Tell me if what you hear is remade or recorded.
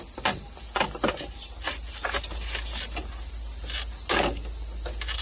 recorded